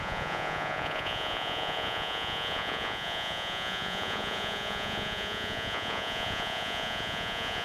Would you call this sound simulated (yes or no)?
yes